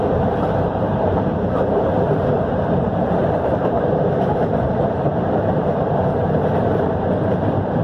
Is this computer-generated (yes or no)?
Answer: yes